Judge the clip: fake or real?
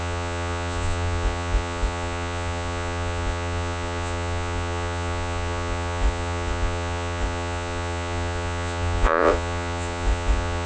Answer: fake